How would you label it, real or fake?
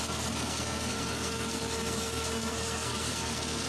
fake